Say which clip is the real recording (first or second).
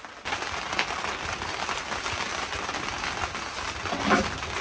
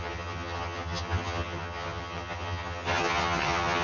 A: first